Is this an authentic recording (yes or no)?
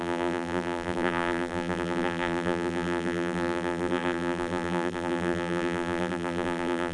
no